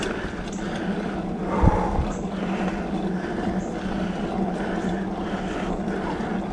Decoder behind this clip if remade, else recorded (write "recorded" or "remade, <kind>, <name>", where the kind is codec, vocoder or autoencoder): recorded